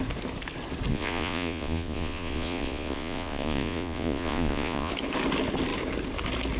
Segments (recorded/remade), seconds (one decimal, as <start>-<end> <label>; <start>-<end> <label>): 0.0-0.9 recorded; 0.9-4.9 remade; 4.9-6.6 recorded